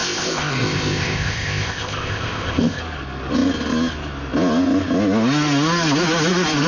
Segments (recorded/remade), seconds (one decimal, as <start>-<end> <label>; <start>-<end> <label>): 0.0-2.8 remade; 2.8-6.7 recorded